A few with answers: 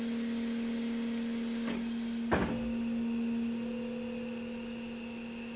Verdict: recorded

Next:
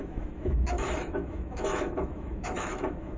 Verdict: remade